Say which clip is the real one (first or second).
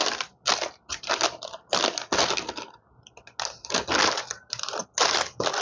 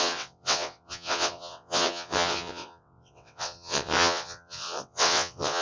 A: first